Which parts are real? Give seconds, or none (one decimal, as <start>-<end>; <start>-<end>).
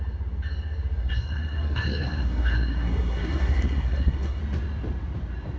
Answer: 0.0-1.0; 4.4-5.6